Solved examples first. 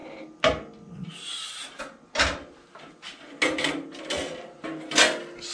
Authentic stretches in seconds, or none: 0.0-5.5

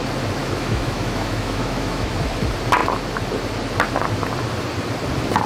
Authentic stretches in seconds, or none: 0.0-0.4; 2.1-5.5